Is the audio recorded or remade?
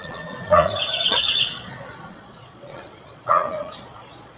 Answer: remade